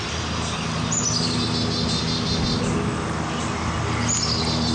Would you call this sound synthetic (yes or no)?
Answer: no